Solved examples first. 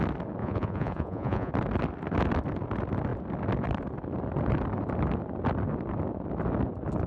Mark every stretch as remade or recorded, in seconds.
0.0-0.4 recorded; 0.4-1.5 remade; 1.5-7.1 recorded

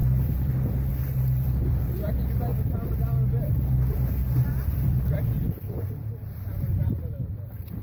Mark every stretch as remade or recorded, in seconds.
0.0-2.5 remade; 2.5-3.4 recorded; 3.4-6.7 remade; 6.7-7.3 recorded; 7.3-7.8 remade

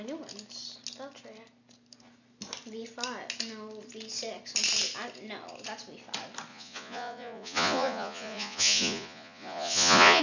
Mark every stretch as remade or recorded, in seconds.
0.0-6.5 recorded; 6.5-10.2 remade

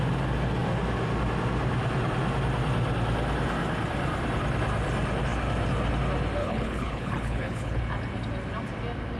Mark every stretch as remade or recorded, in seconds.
0.0-6.4 recorded; 6.4-7.8 remade; 7.8-9.2 recorded